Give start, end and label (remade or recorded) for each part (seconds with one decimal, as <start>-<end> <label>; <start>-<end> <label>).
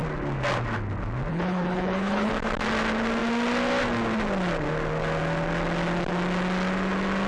0.0-1.3 recorded; 1.3-2.3 remade; 2.3-7.3 recorded